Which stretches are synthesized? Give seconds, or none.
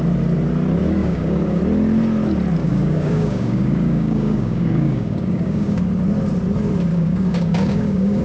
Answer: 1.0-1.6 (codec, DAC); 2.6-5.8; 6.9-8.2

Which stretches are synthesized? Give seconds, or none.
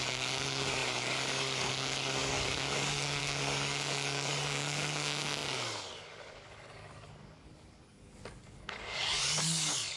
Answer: 0.0-10.0 (codec, DAC)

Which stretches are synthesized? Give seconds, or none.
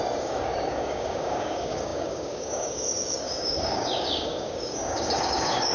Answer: 0.0-5.7 (codec, DAC)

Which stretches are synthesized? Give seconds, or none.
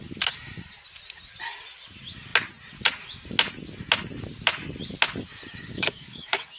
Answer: 5.7-6.6 (codec, DAC)